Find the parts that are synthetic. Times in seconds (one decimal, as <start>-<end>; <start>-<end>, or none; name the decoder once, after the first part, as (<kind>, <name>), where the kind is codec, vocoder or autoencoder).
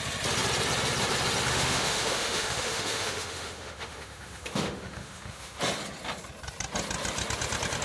1.5-5.6 (autoencoder, DAC-VAE)